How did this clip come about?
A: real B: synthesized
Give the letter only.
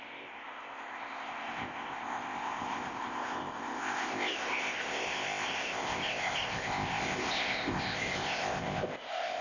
B